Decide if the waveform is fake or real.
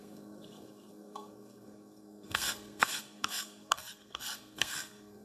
fake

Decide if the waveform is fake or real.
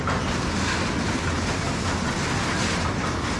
real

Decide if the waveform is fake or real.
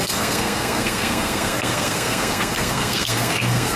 fake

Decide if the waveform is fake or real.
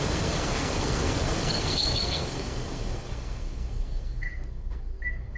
fake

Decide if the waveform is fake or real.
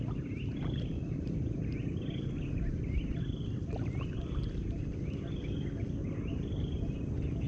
real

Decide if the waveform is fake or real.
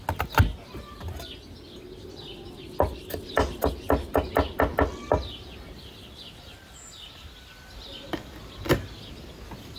real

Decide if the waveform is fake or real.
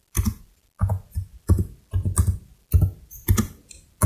real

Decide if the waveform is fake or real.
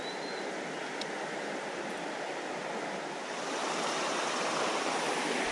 real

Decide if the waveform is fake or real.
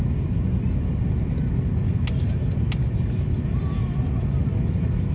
real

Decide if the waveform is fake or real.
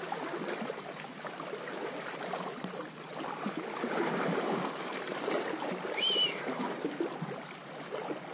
real